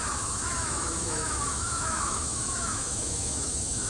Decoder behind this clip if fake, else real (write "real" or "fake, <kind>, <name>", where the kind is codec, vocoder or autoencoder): fake, autoencoder, DAC-VAE